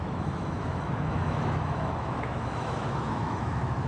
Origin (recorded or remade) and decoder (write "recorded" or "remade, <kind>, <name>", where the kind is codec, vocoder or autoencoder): remade, autoencoder, DAC-VAE